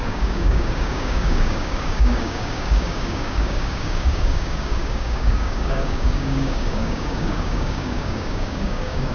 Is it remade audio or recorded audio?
remade